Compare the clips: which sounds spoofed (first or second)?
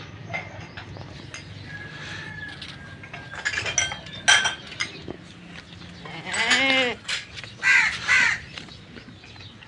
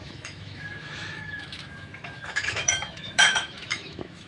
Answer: second